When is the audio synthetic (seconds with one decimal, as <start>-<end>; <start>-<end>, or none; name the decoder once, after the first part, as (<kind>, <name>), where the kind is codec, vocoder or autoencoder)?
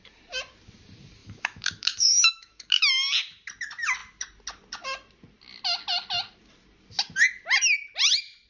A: 1.2-2.9 (autoencoder, DAC-VAE)